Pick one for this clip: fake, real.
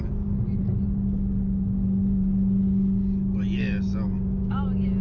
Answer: real